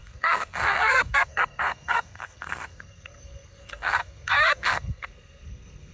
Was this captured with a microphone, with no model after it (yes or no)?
no